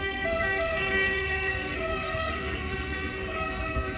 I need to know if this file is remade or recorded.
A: remade